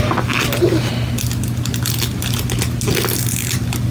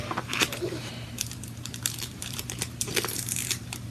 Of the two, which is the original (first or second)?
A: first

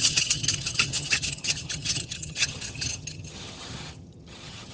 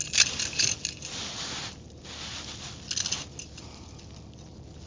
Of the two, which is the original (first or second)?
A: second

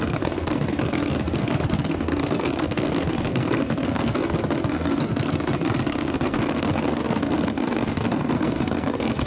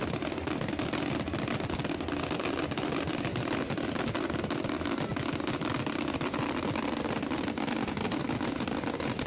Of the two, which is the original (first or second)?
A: second